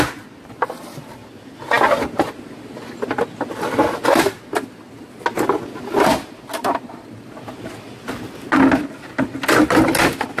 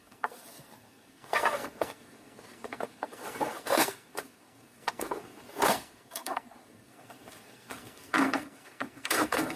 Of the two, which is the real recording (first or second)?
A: first